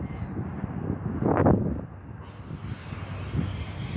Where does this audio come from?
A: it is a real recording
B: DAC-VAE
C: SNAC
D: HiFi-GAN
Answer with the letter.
A